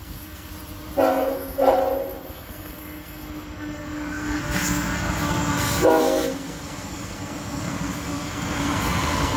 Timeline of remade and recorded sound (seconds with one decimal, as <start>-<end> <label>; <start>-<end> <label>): 0.0-0.5 remade; 0.5-1.1 recorded; 1.1-1.8 remade; 1.8-2.3 recorded; 2.3-9.4 remade